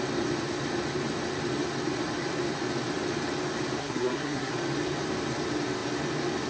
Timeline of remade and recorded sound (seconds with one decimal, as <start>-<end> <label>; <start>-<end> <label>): 0.0-3.8 recorded; 3.8-4.5 remade; 4.5-6.5 recorded